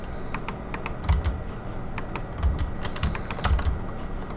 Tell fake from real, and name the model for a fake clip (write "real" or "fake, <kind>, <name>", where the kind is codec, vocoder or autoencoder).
real